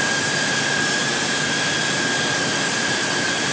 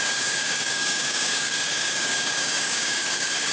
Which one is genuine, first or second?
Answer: first